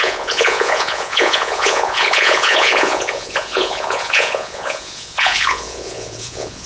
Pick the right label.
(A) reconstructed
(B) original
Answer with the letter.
A